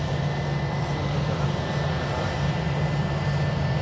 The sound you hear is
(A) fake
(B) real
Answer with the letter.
B